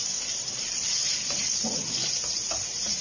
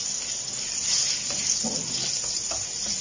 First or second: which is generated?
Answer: first